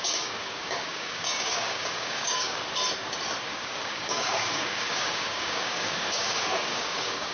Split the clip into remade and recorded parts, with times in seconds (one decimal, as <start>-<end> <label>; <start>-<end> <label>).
0.0-2.6 remade; 2.6-3.5 recorded; 3.5-7.3 remade

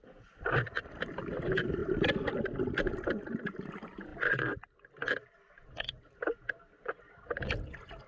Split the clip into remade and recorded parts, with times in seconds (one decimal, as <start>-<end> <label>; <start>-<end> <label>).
0.0-1.8 remade; 1.8-3.2 recorded; 3.2-8.1 remade